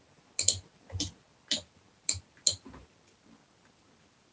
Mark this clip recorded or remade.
recorded